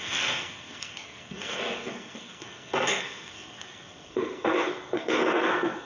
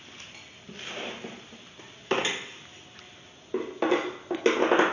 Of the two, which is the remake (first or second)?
first